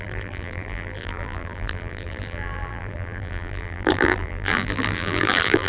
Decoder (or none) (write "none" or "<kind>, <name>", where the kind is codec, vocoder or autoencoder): vocoder, BigVGAN v2